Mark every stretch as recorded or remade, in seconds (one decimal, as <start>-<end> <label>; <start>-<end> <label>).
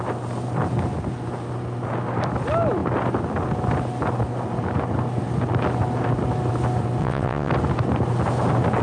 0.0-7.0 recorded; 7.0-7.5 remade; 7.5-8.8 recorded